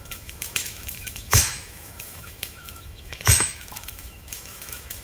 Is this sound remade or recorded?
remade